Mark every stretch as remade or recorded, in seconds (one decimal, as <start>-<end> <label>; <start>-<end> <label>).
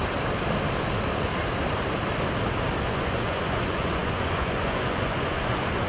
0.0-2.9 recorded; 2.9-5.9 remade